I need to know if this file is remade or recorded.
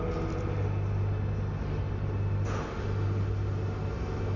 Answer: recorded